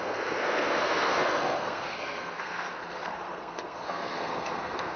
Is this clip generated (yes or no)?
yes